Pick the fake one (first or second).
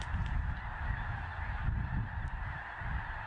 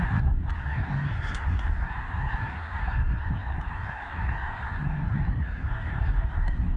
second